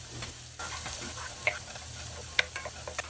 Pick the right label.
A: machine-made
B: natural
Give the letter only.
B